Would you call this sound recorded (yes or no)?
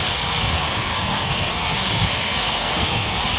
no